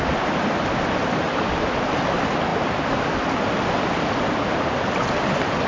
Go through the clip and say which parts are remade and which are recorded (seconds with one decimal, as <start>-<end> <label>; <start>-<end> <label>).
0.0-5.7 recorded